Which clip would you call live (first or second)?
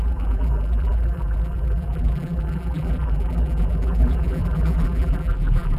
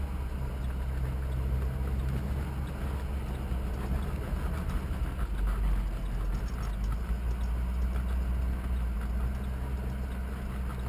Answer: second